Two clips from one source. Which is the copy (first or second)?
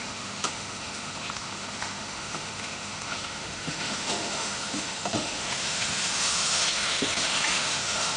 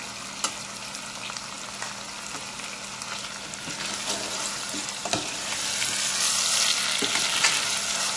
first